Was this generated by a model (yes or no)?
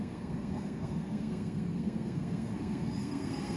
yes